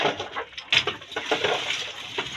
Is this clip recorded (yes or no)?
yes